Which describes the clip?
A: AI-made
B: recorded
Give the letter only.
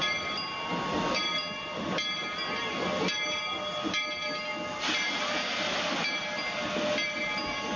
B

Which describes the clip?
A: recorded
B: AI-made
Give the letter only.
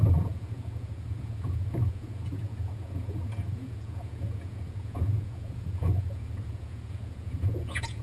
B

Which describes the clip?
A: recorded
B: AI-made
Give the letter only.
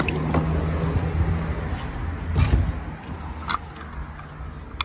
A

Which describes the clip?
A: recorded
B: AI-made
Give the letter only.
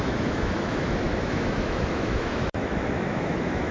B